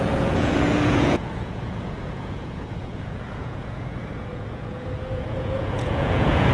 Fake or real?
fake